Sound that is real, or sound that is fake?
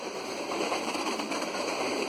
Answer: fake